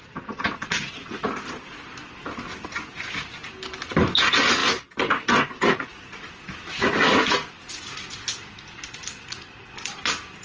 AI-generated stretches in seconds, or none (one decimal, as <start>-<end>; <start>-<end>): none